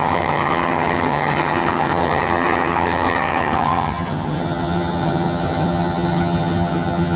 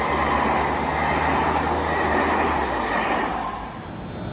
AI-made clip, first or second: first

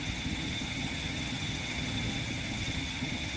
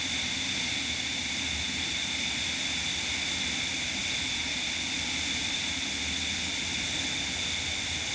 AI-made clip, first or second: first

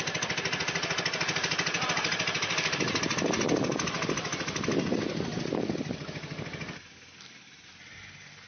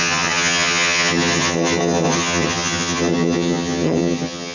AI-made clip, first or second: second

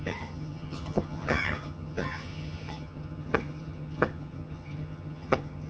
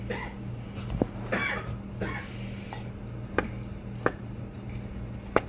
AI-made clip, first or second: first